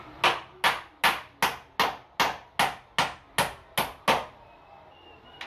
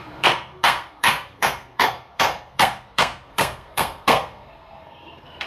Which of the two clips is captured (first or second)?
first